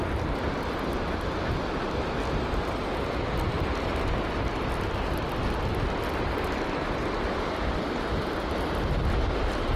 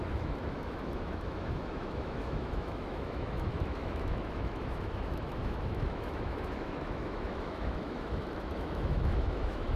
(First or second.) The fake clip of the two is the second